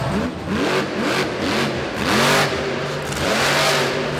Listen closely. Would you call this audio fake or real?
real